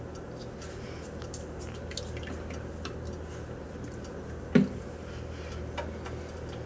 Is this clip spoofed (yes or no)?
no